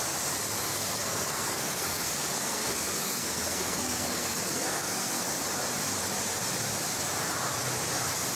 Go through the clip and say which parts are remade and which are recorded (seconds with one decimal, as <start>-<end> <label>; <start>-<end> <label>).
0.0-0.7 recorded; 0.7-5.3 remade; 5.3-8.3 recorded